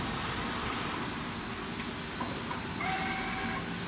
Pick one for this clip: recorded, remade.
recorded